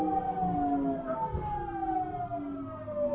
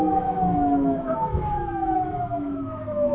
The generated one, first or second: second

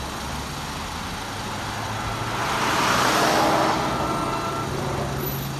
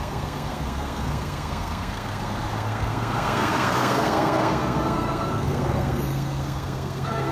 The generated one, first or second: second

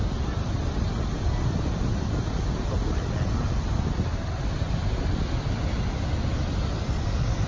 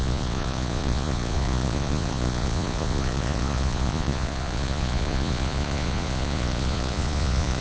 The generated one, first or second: second